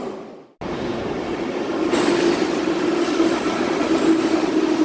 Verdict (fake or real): real